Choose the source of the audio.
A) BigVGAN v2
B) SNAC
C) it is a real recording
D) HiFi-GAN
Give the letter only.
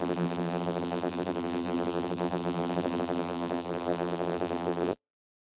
A